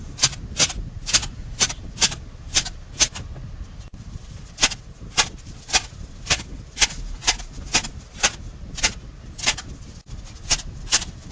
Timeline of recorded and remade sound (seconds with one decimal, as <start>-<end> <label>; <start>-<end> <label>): 0.0-11.3 recorded